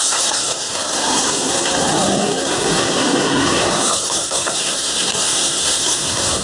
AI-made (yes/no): yes